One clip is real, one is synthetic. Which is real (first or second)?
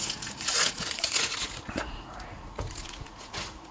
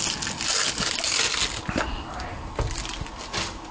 second